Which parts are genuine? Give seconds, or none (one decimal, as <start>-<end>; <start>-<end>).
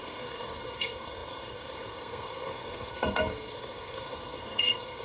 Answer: none